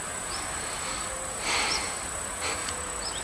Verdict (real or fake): real